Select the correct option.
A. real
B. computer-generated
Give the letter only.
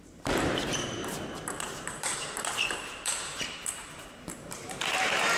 B